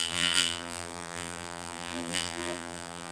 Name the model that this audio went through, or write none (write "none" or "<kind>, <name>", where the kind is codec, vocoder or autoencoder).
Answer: vocoder, BigVGAN v2